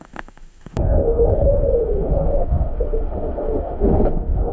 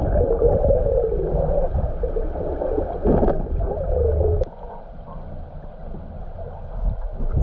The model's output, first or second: first